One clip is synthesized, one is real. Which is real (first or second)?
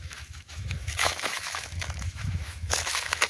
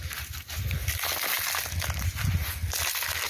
second